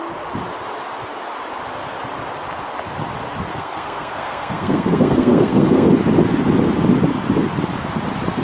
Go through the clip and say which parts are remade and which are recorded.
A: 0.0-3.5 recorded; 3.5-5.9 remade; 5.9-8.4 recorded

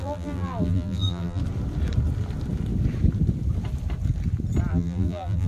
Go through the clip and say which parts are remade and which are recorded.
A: 0.0-1.4 remade; 1.4-4.7 recorded; 4.7-5.5 remade

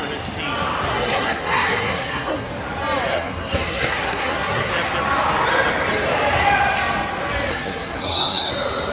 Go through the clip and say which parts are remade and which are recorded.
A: 0.0-0.9 recorded; 0.9-2.5 remade; 2.5-3.1 recorded; 3.1-4.7 remade; 4.7-7.5 recorded; 7.5-8.5 remade; 8.5-8.9 recorded